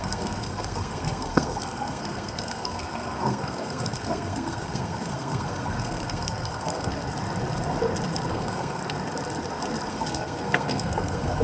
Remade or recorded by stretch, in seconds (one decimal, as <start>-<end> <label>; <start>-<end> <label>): 0.0-6.9 remade; 6.9-8.3 recorded; 8.3-8.8 remade; 8.8-9.9 recorded; 9.9-11.4 remade